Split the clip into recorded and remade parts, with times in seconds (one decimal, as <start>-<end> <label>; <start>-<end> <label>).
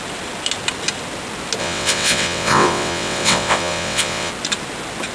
0.0-1.6 recorded; 1.6-4.3 remade; 4.3-5.1 recorded